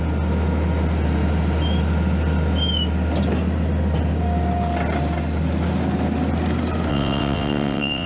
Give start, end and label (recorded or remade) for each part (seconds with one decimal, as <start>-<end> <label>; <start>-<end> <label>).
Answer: 0.0-6.9 recorded; 6.9-8.1 remade